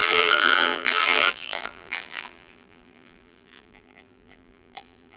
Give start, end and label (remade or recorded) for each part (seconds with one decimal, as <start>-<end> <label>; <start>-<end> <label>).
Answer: 0.0-5.2 remade